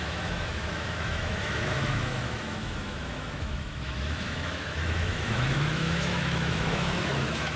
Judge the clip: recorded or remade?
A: remade